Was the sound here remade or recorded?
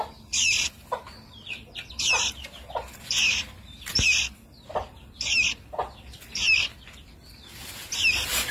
remade